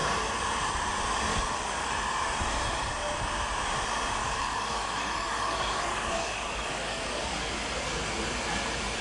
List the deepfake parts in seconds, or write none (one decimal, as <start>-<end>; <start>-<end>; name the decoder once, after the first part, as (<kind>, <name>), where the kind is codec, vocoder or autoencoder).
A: 1.3-1.9 (codec, DAC); 4.2-7.5